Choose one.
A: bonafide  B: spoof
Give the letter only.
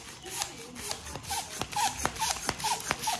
A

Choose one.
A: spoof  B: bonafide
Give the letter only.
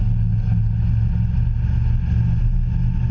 B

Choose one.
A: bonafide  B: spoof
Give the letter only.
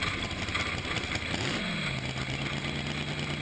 A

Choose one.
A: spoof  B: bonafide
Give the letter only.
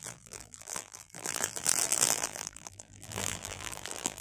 A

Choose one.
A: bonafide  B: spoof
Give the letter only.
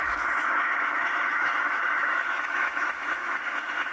B